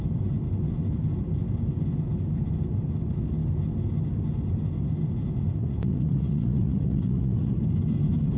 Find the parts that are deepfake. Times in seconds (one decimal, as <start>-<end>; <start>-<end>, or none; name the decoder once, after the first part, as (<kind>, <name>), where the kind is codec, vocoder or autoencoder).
5.6-7.6 (vocoder, Vocos)